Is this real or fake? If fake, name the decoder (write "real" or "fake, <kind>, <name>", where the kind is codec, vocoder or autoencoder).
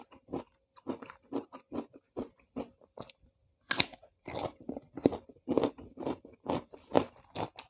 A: real